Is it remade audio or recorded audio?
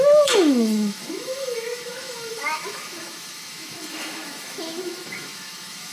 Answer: remade